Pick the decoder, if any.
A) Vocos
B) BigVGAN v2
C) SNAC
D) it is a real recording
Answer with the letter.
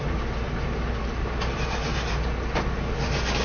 D